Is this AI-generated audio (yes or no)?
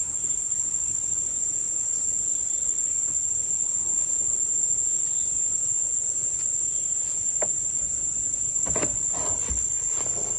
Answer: no